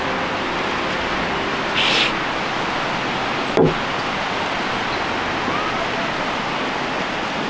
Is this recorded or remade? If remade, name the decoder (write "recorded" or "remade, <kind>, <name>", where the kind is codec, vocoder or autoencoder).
recorded